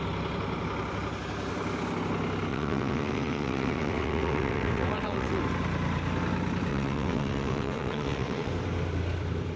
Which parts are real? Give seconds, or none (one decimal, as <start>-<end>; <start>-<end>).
0.0-2.5; 5.4-6.7; 8.5-9.6